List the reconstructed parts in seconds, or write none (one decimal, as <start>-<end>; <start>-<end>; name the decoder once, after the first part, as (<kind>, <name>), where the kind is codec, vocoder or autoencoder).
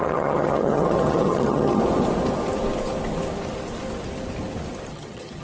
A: 0.0-1.8 (vocoder, HiFi-GAN); 4.9-5.4